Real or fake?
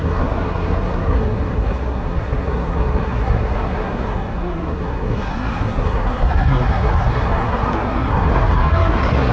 fake